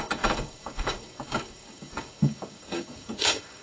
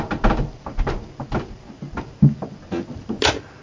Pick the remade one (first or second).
first